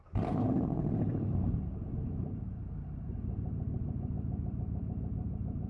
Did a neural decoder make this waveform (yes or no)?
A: yes